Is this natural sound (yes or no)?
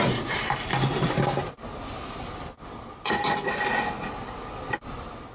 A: yes